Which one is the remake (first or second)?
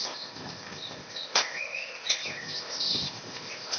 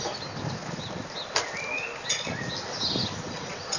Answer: first